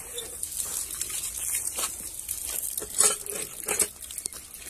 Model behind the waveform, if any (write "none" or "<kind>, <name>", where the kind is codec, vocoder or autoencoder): none